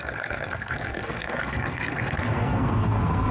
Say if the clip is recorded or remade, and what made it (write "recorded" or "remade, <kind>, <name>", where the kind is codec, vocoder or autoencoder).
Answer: remade, codec, SNAC